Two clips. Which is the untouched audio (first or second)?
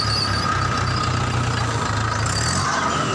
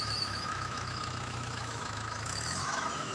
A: first